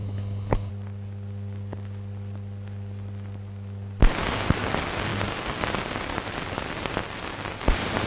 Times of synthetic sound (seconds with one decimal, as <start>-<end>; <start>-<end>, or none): 0.0-0.7